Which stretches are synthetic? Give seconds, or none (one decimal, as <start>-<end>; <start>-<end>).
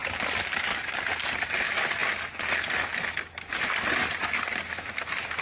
1.2-2.0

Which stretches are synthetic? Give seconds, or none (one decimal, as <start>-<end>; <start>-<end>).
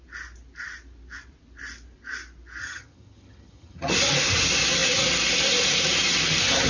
2.6-3.9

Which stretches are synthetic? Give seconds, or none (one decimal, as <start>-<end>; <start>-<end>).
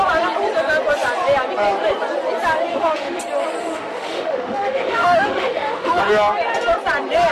2.7-3.2; 3.6-6.0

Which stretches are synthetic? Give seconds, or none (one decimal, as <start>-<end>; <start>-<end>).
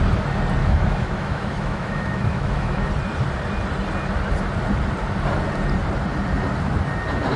0.6-2.9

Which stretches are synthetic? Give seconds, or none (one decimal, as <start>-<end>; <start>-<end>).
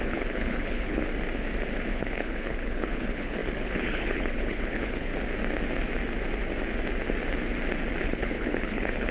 0.0-1.0; 1.9-5.1; 8.0-9.1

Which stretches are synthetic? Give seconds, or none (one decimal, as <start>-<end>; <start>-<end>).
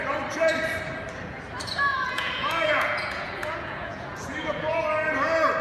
1.9-4.8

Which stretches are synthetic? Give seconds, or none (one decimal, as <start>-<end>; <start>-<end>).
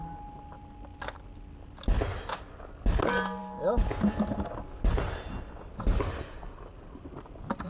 none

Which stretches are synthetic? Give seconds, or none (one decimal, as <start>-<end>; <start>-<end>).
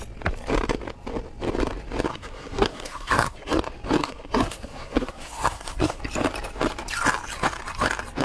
2.1-3.6; 4.0-6.0